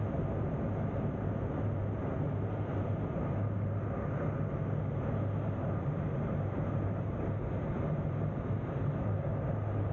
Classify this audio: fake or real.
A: real